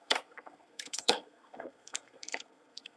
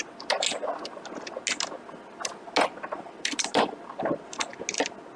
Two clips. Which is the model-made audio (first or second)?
first